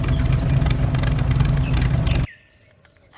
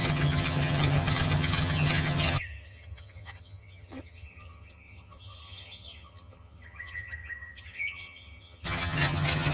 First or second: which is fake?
second